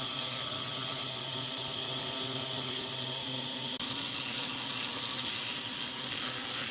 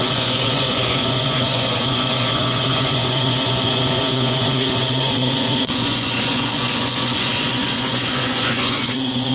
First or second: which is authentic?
first